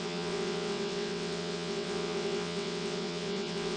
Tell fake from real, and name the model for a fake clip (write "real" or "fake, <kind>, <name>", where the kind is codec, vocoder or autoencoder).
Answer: fake, vocoder, WaveNeXt